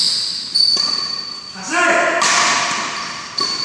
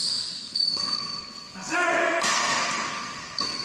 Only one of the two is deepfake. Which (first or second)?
second